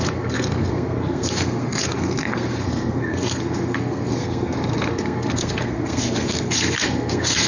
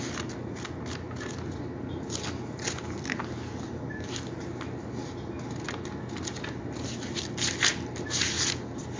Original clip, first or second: second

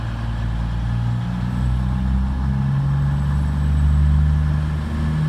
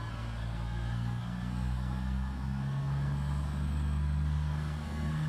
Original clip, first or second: first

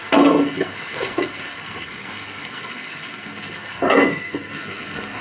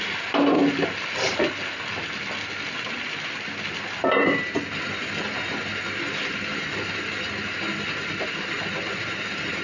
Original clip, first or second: second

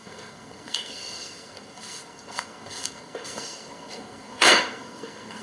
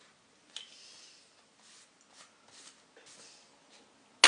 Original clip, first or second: second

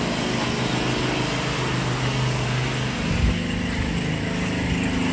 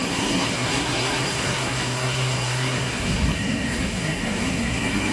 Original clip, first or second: first